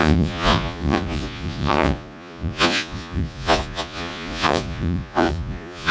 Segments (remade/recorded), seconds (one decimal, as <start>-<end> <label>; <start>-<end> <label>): 0.0-5.9 remade